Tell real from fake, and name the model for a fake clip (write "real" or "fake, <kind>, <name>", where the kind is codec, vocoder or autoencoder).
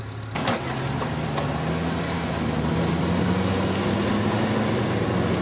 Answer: real